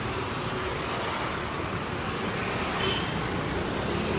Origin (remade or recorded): recorded